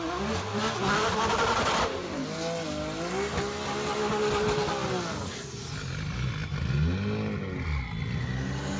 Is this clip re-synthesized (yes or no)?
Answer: no